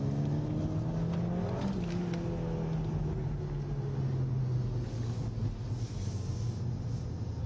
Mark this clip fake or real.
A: real